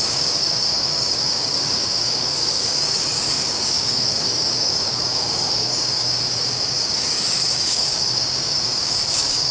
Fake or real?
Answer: fake